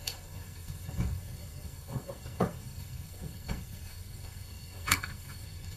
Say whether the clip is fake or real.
fake